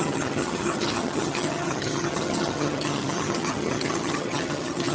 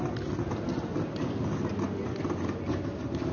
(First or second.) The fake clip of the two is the first